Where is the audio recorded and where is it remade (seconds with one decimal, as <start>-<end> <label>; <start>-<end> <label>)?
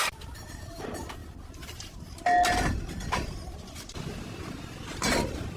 0.0-5.6 recorded